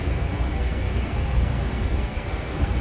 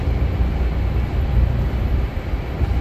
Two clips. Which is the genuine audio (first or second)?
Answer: second